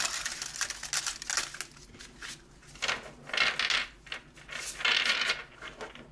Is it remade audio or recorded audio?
recorded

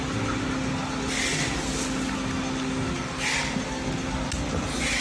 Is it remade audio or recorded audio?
recorded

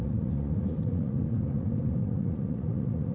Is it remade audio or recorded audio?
remade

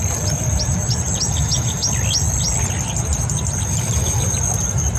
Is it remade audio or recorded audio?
recorded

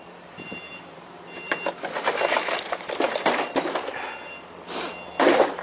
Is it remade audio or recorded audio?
recorded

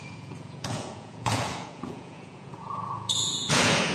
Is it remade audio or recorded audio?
remade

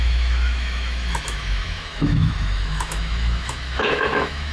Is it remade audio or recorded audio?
remade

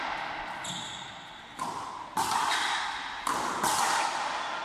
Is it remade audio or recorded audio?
recorded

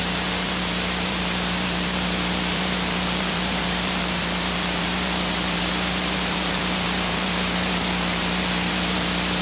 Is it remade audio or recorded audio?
remade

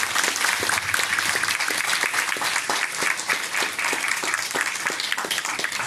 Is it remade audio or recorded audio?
recorded